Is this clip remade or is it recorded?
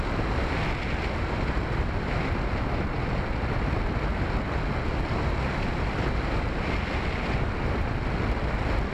recorded